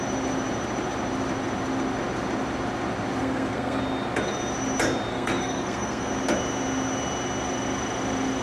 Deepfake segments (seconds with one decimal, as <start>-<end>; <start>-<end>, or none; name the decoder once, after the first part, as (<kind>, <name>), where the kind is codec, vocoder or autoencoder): 3.2-3.8 (codec, SNAC); 5.1-6.1